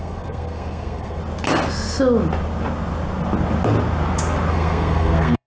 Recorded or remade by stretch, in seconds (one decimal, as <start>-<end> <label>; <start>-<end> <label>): 0.0-1.2 remade; 1.2-4.5 recorded; 4.5-5.5 remade